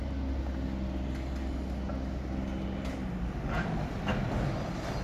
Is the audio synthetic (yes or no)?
no